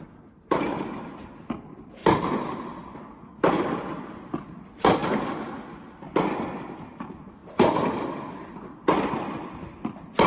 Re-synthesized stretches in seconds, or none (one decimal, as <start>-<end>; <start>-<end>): none